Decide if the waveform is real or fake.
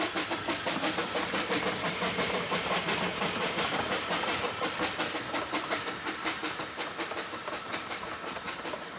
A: fake